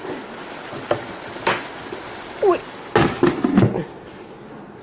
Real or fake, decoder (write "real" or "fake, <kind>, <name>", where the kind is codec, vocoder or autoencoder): real